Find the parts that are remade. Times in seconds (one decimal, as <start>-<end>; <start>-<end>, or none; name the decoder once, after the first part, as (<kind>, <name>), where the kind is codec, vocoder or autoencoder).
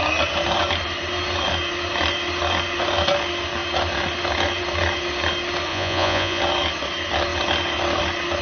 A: 5.7-6.4 (vocoder, Vocos)